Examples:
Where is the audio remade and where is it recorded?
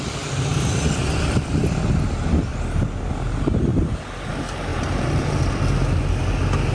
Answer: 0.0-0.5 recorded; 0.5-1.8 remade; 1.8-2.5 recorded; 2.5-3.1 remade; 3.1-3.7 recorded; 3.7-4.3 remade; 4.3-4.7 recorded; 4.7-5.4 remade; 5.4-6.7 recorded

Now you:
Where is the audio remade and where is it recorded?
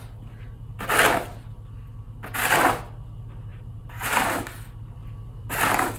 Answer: 0.0-3.5 recorded; 3.5-4.4 remade; 4.4-6.0 recorded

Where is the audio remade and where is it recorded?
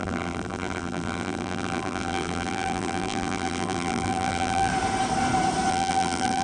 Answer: 0.0-4.7 remade; 4.7-5.7 recorded; 5.7-6.4 remade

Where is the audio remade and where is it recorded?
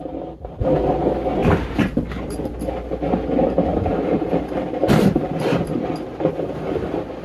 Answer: 0.0-1.4 recorded; 1.4-2.5 remade; 2.5-3.7 recorded; 3.7-6.8 remade; 6.8-7.2 recorded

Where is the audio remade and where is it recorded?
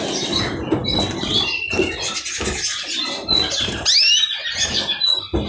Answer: 0.0-5.5 recorded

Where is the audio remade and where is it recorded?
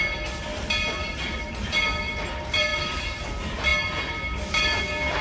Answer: 0.0-1.0 recorded; 1.0-1.7 remade; 1.7-2.7 recorded; 2.7-3.2 remade; 3.2-5.2 recorded